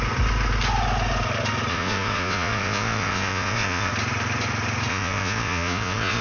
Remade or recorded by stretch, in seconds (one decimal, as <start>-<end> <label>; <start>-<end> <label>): 0.0-1.7 recorded; 1.7-3.9 remade; 3.9-4.9 recorded; 4.9-6.2 remade